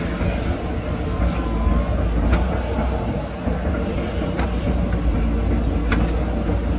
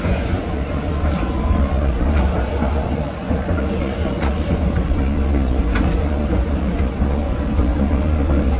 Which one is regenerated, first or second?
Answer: second